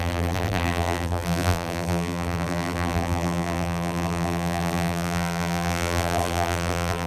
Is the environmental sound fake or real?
fake